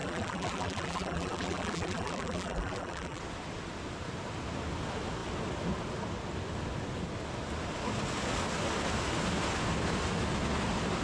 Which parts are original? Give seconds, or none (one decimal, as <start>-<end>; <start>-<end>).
3.2-11.0